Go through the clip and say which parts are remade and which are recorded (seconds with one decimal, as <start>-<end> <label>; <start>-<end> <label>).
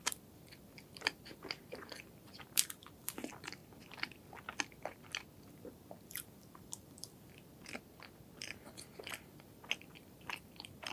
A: 0.0-3.6 remade; 3.6-5.5 recorded; 5.5-7.5 remade; 7.5-8.4 recorded; 8.4-10.9 remade